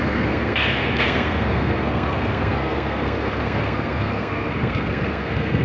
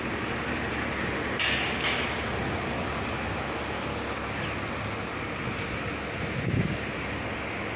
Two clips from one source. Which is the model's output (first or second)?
first